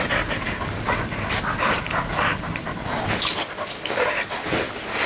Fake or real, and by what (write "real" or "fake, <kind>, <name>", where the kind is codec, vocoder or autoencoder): real